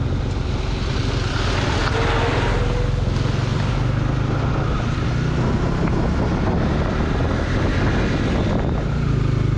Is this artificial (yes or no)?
no